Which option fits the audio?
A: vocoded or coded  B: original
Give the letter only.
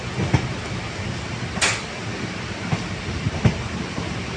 B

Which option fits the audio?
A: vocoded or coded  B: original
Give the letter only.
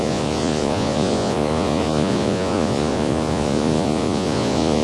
A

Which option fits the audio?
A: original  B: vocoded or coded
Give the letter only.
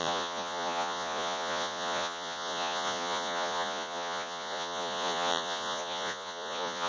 B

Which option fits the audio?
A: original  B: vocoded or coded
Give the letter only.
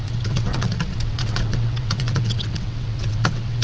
B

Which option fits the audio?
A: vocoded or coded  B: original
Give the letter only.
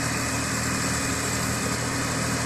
B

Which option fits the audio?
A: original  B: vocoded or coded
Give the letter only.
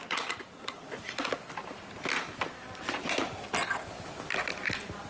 A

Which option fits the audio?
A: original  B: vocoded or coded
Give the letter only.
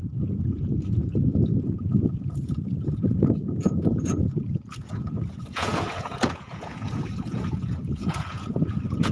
B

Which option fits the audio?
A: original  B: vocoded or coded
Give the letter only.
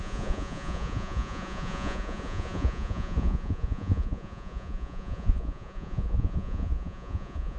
B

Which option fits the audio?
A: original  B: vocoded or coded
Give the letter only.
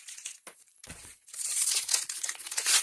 B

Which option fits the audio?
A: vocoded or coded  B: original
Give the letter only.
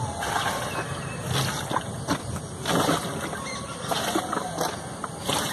B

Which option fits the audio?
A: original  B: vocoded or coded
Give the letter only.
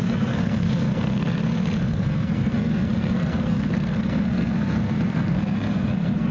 B